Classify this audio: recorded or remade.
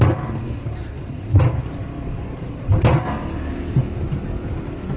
recorded